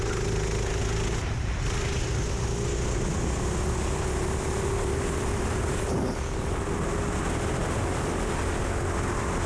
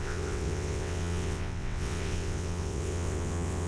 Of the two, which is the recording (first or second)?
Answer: first